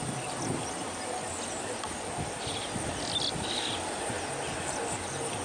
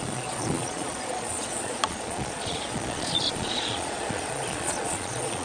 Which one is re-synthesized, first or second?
second